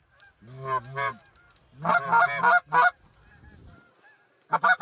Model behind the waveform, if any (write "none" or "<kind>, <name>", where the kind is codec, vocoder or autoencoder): none